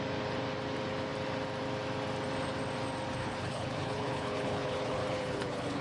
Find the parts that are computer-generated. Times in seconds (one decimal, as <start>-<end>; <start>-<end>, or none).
3.2-5.8